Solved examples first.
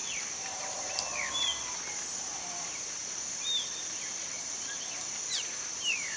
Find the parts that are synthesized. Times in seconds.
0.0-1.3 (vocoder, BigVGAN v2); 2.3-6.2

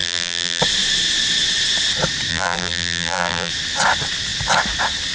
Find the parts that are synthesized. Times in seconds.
0.0-0.6 (vocoder, BigVGAN v2); 2.3-3.5